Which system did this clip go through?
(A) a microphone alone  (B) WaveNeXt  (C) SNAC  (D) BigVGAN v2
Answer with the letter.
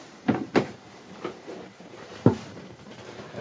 D